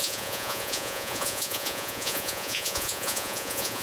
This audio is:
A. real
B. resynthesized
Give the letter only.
B